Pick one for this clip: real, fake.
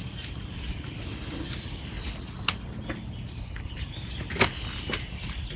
real